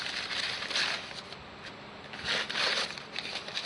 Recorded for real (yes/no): yes